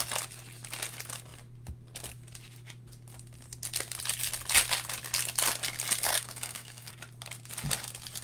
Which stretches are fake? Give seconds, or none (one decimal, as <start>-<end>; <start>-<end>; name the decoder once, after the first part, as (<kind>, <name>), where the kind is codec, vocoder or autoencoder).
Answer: 6.1-6.9 (codec, SNAC)